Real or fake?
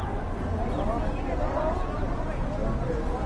real